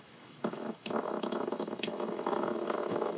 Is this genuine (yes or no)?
no